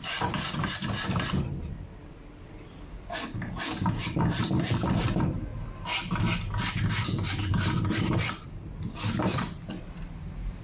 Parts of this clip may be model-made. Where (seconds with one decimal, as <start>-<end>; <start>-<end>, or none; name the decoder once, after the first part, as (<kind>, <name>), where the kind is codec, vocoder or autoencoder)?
0.0-5.5 (vocoder, BigVGAN v2); 8.0-10.6